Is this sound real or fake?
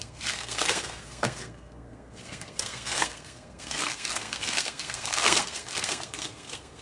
fake